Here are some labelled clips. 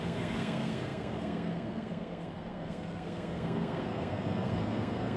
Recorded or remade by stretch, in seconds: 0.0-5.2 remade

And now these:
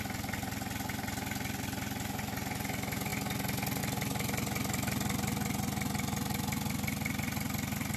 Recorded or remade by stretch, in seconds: 0.0-8.0 recorded